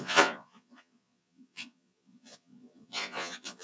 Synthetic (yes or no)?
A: yes